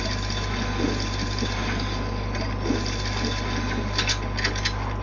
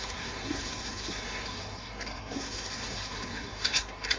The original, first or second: first